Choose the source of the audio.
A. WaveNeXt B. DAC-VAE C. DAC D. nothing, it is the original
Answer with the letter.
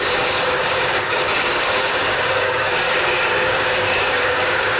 C